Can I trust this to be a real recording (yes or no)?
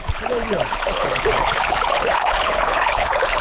no